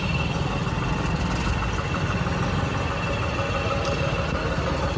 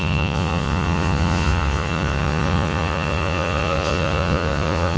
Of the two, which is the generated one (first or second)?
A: second